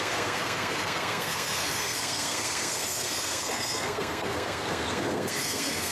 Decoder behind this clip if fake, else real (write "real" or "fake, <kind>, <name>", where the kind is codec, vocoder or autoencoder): fake, codec, SNAC